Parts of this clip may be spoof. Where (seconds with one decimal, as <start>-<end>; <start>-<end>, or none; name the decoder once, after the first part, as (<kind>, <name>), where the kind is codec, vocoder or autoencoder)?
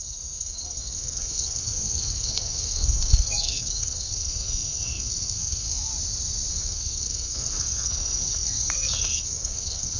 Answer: 0.0-5.9 (codec, SNAC); 6.5-10.0